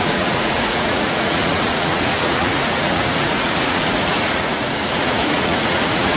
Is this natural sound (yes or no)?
no